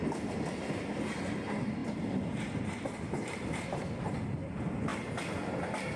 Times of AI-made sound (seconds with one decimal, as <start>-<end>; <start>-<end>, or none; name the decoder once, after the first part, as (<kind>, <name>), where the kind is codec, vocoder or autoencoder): none